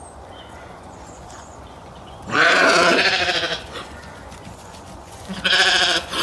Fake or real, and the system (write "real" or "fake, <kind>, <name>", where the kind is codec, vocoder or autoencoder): fake, vocoder, Vocos